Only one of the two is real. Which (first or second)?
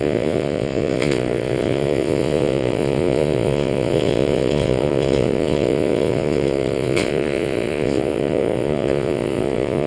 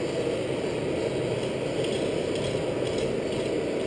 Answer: second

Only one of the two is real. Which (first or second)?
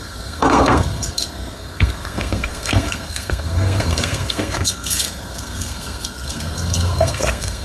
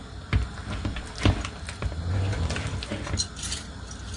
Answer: second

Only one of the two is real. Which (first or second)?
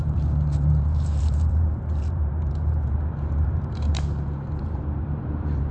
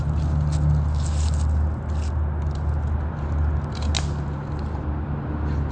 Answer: second